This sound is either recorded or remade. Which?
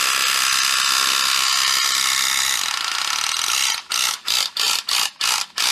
recorded